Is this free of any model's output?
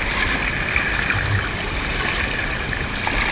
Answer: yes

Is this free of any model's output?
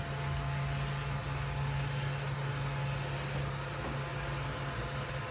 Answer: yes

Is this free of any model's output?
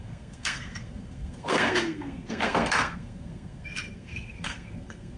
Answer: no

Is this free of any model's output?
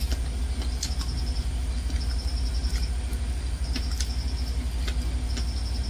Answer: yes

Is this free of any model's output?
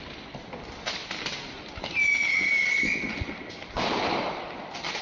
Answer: yes